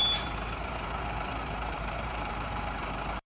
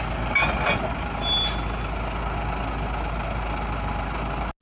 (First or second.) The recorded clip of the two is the second